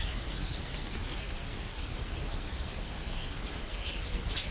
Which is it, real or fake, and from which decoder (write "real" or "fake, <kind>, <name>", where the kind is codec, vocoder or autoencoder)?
fake, codec, SNAC